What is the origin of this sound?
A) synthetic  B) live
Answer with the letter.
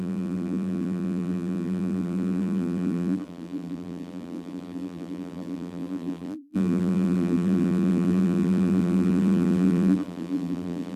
A